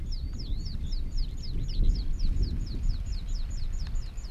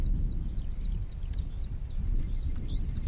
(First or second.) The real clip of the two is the second